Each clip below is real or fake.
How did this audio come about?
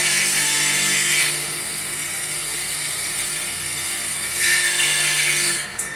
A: fake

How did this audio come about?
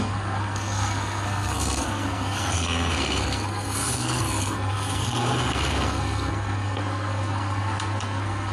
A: fake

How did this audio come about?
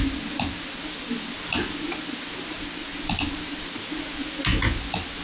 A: real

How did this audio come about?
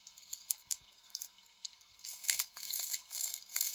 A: fake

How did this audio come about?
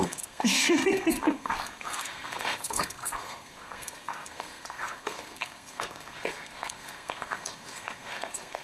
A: fake